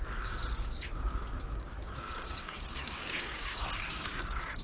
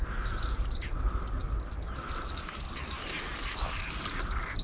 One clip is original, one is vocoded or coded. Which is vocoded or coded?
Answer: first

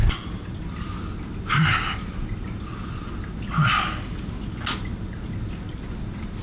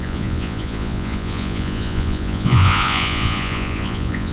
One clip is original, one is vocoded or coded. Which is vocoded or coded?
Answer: second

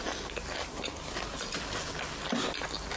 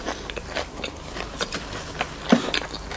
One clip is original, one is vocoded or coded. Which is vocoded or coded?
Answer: second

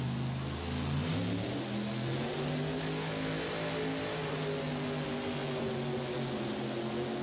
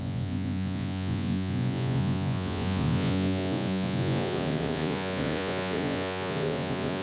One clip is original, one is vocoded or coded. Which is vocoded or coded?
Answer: second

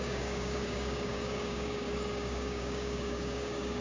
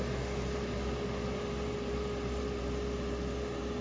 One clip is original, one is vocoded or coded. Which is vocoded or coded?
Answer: first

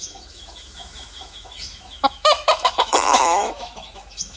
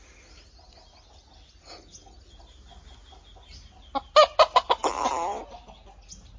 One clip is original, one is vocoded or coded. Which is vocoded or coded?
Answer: first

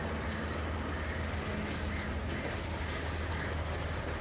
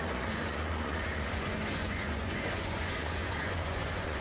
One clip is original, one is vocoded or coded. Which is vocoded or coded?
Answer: second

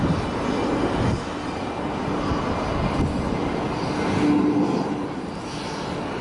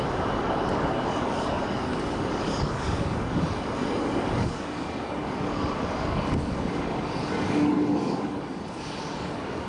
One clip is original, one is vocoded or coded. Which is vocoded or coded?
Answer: second